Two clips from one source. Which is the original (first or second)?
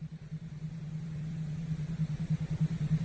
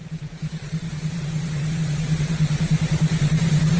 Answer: first